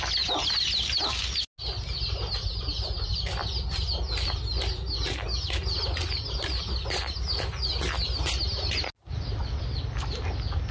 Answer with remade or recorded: recorded